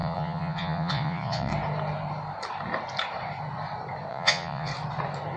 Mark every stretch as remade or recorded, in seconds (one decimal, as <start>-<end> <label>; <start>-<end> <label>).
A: 0.0-1.5 remade; 1.5-4.1 recorded; 4.1-4.7 remade; 4.7-5.4 recorded